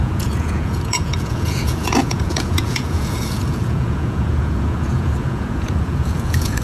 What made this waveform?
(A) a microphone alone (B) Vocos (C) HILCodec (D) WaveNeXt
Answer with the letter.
B